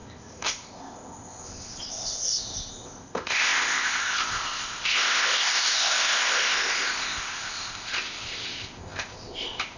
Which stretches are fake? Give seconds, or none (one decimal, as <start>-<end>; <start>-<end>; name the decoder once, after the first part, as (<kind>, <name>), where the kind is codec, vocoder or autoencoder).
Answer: 0.0-9.8 (codec, ZipCodec)